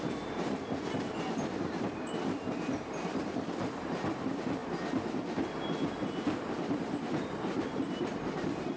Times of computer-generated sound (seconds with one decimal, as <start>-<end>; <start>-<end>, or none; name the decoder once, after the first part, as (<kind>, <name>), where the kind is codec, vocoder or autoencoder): 0.0-4.6 (vocoder, BigVGAN v2); 7.1-8.8

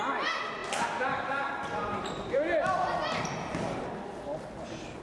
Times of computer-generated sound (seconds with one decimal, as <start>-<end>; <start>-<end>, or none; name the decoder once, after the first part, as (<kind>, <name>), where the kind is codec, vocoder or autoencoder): none